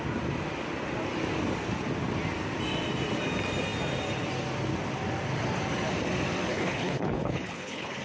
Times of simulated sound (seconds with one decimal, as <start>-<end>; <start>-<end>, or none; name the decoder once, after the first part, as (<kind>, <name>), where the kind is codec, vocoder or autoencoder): 6.5-8.0 (codec, HILCodec)